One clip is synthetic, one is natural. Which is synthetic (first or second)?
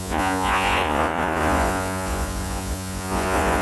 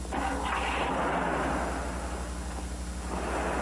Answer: first